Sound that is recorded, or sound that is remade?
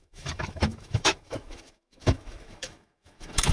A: remade